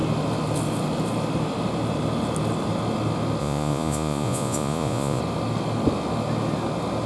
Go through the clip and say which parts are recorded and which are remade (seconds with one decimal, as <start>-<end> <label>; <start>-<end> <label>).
0.0-3.4 recorded; 3.4-5.2 remade; 5.2-7.1 recorded